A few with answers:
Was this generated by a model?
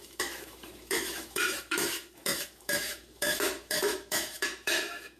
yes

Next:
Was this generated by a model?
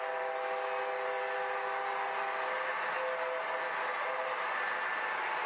no